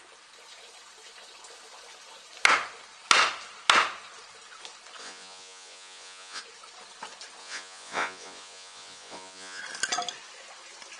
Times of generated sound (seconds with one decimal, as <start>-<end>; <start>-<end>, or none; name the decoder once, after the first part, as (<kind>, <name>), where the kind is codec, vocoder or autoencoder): 5.0-6.4 (vocoder, Vocos); 7.4-9.6